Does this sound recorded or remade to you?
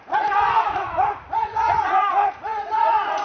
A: remade